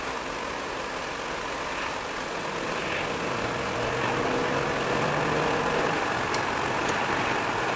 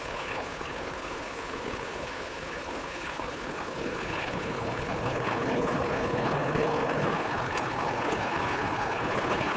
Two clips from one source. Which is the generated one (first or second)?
second